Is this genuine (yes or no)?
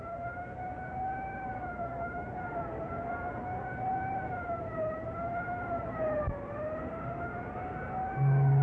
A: yes